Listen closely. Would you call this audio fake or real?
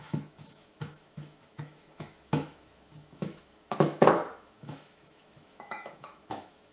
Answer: fake